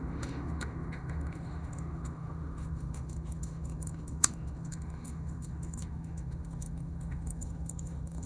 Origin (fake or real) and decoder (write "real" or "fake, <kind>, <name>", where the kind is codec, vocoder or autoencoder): fake, autoencoder, DAC-VAE